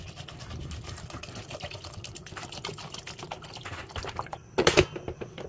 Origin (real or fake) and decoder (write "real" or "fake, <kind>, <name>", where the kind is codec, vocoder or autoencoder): real